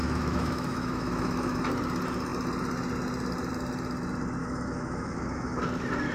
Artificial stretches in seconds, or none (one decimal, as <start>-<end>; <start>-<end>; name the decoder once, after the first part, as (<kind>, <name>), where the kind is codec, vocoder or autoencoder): 0.0-1.6 (autoencoder, DAC-VAE); 4.4-5.6